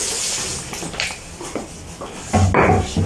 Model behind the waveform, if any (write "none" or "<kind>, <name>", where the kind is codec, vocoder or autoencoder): none